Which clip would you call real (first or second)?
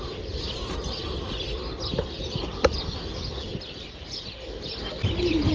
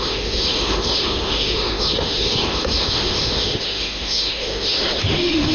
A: first